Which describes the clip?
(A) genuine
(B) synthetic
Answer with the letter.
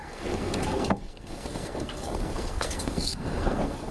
B